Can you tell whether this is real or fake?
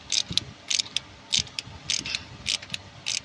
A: real